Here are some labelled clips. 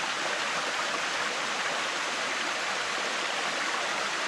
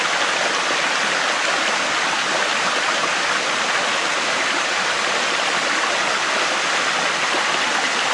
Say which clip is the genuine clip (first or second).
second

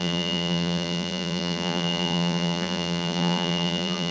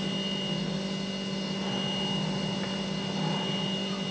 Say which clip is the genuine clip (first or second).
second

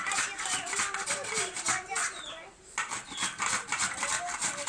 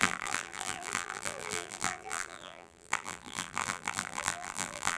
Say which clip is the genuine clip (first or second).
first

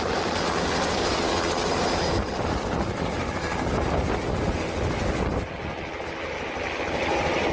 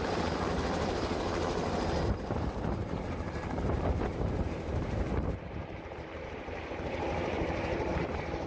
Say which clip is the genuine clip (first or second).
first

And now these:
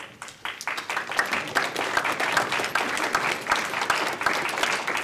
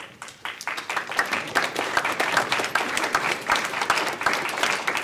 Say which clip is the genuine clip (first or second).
first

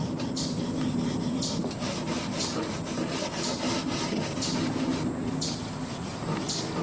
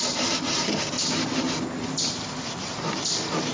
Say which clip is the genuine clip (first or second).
first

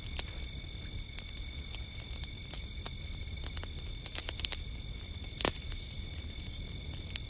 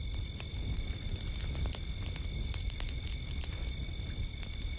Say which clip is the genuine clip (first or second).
first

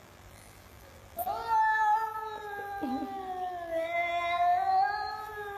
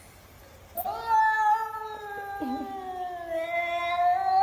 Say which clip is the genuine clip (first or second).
second